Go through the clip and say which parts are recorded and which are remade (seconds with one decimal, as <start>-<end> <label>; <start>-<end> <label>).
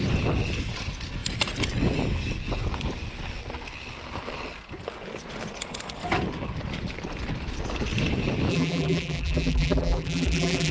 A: 0.0-8.5 recorded; 8.5-10.7 remade